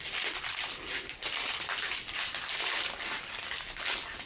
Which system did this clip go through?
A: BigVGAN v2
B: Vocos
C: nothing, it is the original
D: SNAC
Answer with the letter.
C